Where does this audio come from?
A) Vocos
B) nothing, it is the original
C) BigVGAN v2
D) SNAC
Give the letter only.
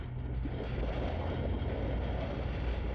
B